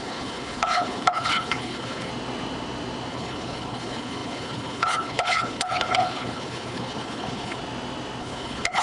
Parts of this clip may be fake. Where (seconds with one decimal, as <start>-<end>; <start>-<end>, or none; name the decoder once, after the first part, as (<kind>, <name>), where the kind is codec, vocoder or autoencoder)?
0.0-2.1 (codec, HILCodec); 3.1-7.6; 8.2-8.8